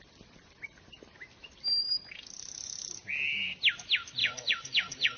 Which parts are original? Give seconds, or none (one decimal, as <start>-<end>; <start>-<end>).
0.0-4.2